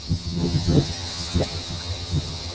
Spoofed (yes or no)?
yes